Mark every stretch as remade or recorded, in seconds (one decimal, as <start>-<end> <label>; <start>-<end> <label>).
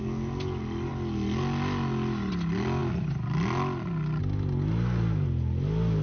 0.0-6.0 recorded